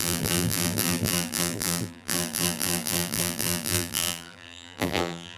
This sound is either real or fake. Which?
fake